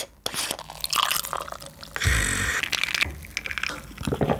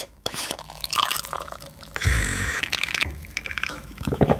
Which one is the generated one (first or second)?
second